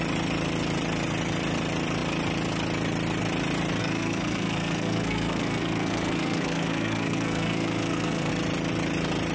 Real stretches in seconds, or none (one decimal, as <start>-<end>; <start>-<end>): 0.0-3.8; 8.3-9.3